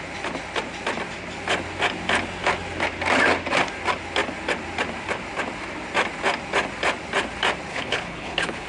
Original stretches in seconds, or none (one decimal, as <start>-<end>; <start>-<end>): 0.0-7.7